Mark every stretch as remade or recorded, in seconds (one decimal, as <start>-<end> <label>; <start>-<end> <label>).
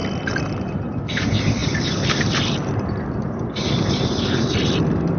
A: 0.0-5.2 recorded